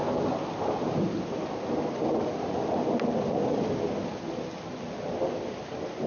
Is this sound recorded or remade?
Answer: recorded